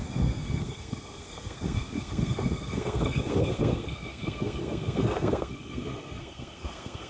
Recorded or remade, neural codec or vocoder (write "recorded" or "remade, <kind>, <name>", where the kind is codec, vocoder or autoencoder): remade, codec, SNAC